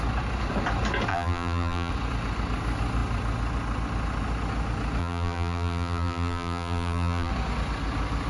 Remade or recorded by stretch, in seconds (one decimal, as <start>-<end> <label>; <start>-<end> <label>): 0.0-1.1 recorded; 1.1-1.9 remade; 1.9-5.0 recorded; 5.0-7.3 remade; 7.3-8.3 recorded